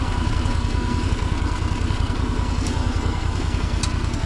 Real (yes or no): no